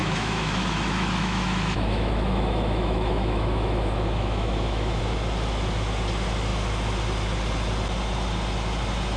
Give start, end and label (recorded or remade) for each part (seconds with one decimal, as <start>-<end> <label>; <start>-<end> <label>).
0.0-5.0 remade; 5.0-9.2 recorded